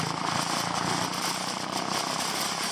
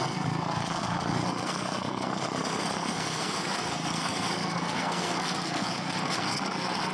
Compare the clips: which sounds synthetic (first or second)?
second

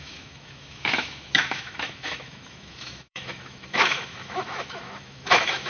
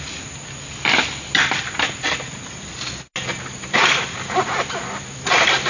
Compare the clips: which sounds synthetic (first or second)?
first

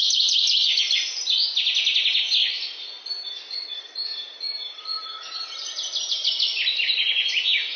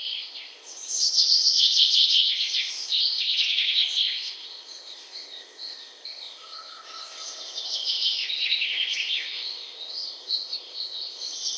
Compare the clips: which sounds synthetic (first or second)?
second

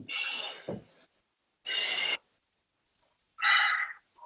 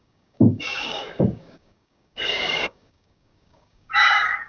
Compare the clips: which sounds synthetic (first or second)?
second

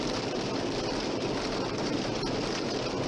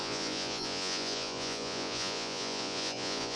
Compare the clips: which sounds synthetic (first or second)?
second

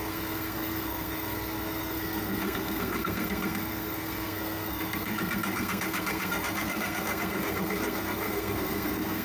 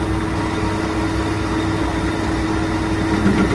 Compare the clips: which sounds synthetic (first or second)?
first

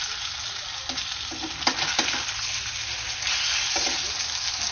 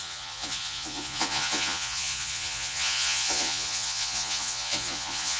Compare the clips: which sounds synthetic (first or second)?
second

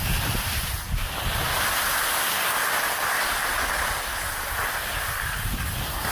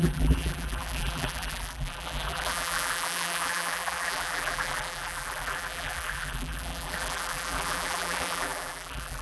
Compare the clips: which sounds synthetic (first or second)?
second